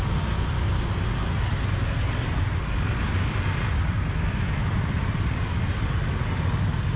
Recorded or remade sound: recorded